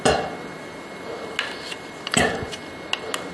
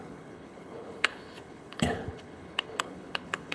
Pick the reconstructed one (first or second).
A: second